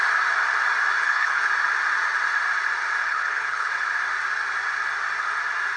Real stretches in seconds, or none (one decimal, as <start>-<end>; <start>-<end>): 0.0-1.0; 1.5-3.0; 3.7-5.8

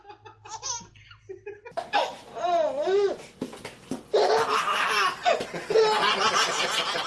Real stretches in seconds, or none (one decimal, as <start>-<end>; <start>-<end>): 0.0-7.1

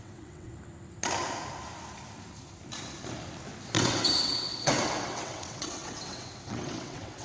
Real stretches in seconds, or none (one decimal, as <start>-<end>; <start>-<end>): 0.5-3.8

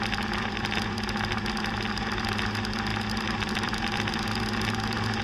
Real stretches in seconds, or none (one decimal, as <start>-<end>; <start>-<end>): 0.0-5.2

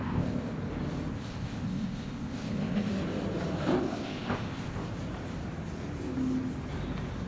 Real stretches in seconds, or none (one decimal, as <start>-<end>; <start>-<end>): 0.5-1.1; 2.9-3.8; 4.8-7.3

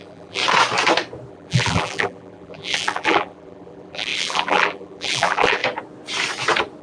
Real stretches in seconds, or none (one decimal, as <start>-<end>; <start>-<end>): 0.4-1.3; 5.6-6.8